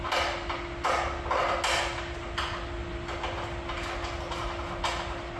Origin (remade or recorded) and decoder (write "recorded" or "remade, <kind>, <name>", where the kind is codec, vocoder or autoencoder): recorded